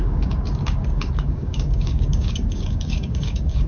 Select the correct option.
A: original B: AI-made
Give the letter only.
B